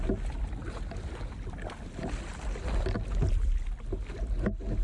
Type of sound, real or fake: real